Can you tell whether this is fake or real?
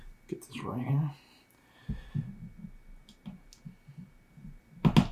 real